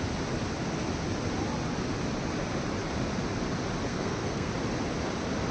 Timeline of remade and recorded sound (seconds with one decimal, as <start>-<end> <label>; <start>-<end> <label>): 0.0-3.9 recorded; 3.9-4.5 remade; 4.5-5.5 recorded